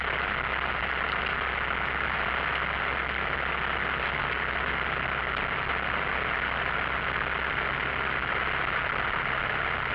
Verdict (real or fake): real